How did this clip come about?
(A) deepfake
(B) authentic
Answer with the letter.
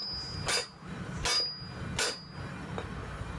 B